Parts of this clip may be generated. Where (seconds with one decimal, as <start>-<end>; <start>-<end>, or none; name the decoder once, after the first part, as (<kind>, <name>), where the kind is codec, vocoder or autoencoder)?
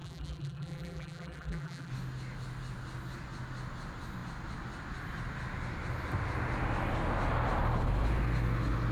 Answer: 0.0-1.9 (vocoder, BigVGAN v2)